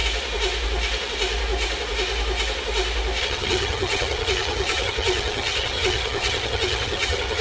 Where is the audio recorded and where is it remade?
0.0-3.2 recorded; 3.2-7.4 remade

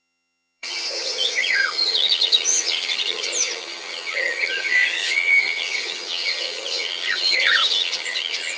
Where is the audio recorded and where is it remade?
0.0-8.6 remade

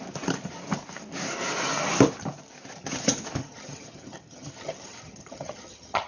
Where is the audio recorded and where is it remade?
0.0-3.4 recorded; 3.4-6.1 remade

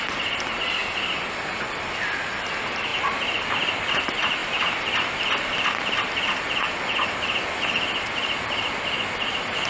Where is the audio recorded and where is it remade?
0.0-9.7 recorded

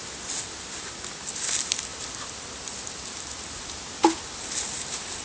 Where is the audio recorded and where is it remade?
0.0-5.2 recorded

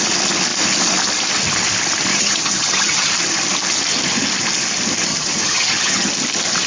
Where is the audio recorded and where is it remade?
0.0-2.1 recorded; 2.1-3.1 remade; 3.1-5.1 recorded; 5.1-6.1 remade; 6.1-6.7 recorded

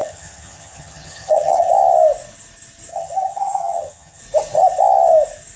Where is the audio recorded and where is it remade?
0.0-1.7 remade; 1.7-2.9 recorded; 2.9-4.2 remade; 4.2-5.6 recorded